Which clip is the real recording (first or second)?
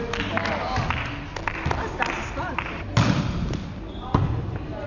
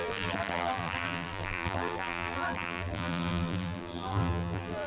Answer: first